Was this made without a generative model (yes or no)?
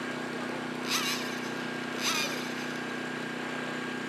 yes